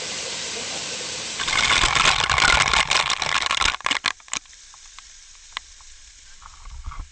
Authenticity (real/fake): real